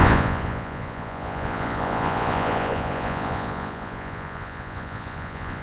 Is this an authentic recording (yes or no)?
no